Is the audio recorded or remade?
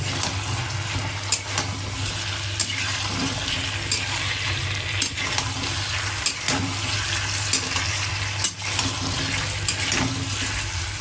recorded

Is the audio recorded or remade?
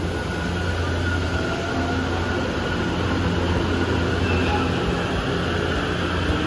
recorded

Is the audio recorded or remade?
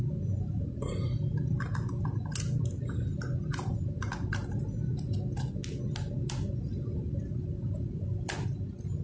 recorded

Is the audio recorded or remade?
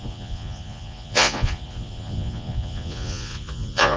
remade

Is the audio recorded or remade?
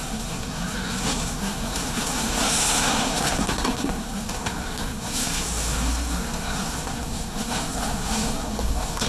remade